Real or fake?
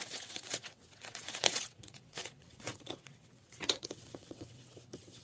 fake